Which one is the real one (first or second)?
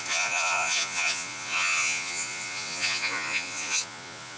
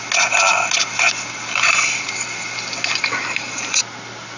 second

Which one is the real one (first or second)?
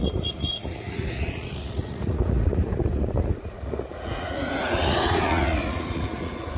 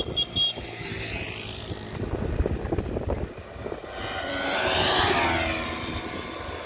second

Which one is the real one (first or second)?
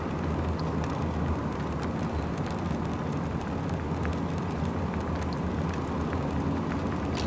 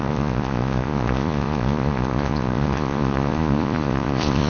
first